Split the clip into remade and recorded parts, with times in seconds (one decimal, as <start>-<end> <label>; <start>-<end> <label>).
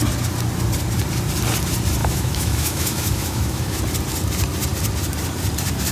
0.0-2.0 recorded; 2.0-3.8 remade; 3.8-5.9 recorded